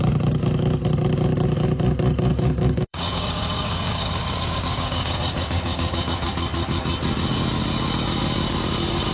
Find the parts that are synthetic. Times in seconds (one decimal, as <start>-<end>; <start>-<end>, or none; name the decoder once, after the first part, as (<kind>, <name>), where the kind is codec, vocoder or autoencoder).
2.3-6.3 (codec, DAC)